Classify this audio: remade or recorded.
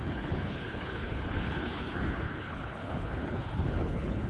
remade